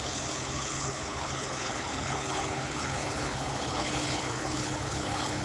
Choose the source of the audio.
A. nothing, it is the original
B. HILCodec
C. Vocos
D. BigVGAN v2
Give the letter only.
B